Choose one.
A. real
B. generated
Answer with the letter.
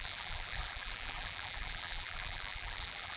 B